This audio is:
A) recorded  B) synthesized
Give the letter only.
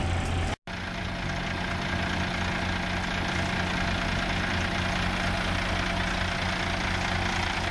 A